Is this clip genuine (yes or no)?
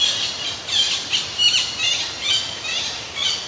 yes